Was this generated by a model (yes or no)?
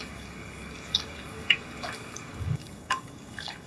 yes